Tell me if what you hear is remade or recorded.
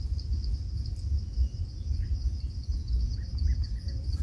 recorded